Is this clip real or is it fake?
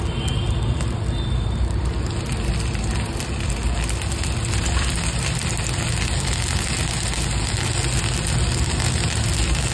real